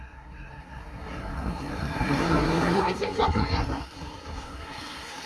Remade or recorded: remade